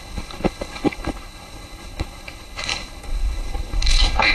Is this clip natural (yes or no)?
no